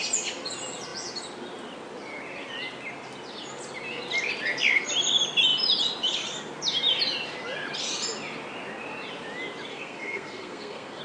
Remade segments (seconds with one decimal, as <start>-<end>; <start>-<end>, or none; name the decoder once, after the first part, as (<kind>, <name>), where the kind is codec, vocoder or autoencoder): 9.7-11.0 (codec, SNAC)